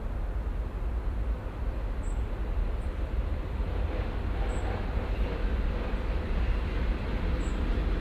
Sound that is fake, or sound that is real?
real